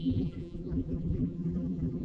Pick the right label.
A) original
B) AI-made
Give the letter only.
B